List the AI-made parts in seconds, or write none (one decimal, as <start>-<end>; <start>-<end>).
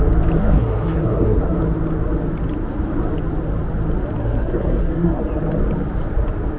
0.4-1.6; 4.2-5.2